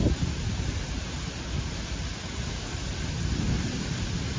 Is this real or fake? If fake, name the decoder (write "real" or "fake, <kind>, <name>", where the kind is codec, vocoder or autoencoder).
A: real